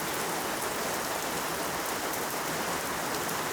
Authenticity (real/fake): real